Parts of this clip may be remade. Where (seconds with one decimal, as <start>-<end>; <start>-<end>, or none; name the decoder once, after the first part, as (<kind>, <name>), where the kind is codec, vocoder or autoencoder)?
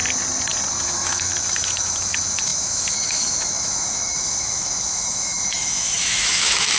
0.7-6.8 (autoencoder, DAC-VAE)